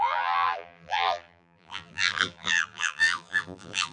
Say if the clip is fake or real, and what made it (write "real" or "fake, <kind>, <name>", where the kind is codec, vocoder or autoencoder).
fake, vocoder, BigVGAN v2